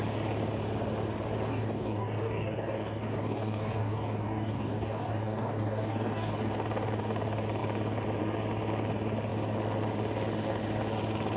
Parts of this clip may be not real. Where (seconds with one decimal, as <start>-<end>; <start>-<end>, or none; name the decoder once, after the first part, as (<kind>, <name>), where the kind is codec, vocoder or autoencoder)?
1.5-6.5 (codec, DAC)